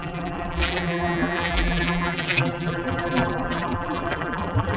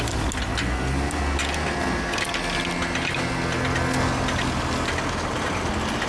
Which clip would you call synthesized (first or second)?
first